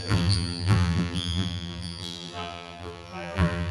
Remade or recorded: remade